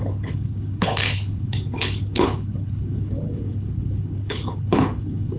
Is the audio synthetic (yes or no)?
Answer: yes